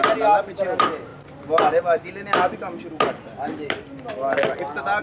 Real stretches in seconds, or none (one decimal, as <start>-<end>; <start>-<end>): 0.0-5.0